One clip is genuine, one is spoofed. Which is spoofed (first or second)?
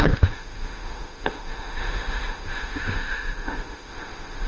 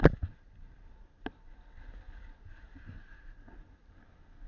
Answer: first